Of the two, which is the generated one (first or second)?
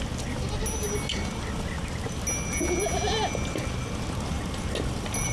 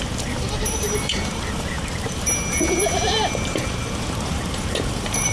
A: second